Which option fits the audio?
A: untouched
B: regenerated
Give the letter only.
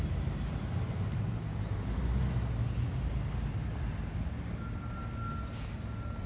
A